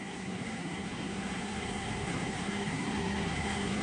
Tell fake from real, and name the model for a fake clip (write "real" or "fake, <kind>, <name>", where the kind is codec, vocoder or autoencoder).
fake, codec, SNAC